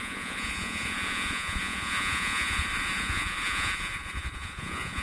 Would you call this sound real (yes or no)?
no